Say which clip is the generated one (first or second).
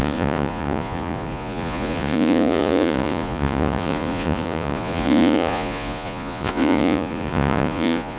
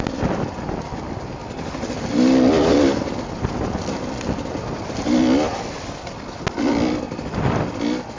first